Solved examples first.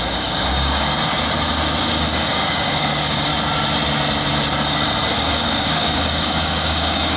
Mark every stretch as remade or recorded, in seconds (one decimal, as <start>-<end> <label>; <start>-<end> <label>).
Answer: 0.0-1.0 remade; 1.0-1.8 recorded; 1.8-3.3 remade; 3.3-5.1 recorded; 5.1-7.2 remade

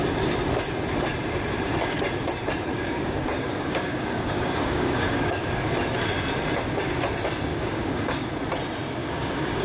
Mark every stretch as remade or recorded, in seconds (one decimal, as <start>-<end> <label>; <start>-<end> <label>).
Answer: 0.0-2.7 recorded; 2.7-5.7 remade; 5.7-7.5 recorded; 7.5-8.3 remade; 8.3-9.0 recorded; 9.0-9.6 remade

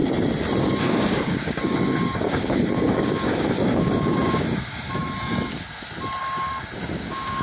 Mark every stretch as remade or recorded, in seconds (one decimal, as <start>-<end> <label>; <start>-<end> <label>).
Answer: 0.0-0.8 recorded; 0.8-5.0 remade; 5.0-6.2 recorded; 6.2-7.4 remade

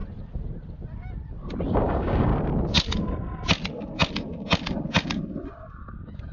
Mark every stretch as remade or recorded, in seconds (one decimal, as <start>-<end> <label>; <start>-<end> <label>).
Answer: 0.0-1.7 recorded; 1.7-2.3 remade; 2.3-5.8 recorded; 5.8-6.3 remade

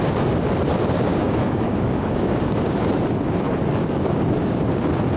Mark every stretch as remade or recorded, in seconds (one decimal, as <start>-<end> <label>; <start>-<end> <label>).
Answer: 0.0-1.1 recorded; 1.1-2.8 remade; 2.8-3.8 recorded; 3.8-4.6 remade; 4.6-5.2 recorded

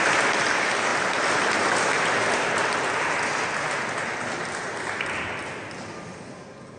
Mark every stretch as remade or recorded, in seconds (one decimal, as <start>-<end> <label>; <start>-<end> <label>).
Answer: 0.0-6.8 recorded

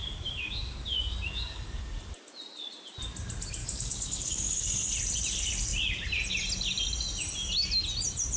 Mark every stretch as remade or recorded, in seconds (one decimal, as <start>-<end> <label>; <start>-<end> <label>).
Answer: 0.0-1.8 remade; 1.8-3.6 recorded; 3.6-4.9 remade; 4.9-8.4 recorded

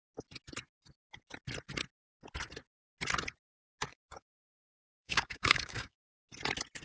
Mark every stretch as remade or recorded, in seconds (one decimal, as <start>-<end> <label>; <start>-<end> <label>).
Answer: 0.0-3.9 recorded; 3.9-6.0 remade; 6.0-6.8 recorded